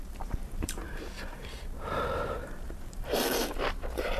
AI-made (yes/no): yes